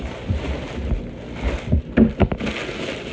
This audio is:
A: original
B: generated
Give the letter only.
A